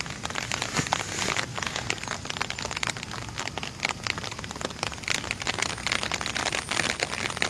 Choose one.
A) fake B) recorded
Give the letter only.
B